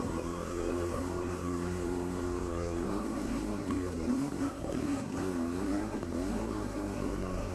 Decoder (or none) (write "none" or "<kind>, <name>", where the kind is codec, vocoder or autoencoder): codec, SNAC